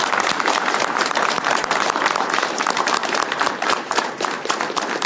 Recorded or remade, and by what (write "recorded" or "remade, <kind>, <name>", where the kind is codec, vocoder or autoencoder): remade, vocoder, BigVGAN v2